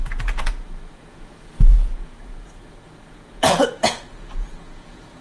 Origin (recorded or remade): remade